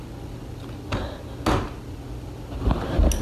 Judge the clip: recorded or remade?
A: recorded